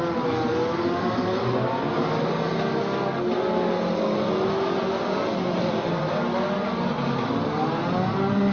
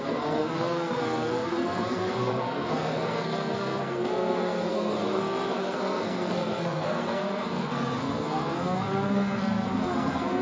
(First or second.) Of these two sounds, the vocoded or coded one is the second